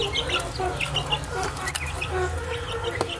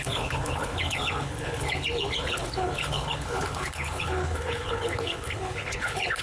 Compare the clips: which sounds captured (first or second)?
first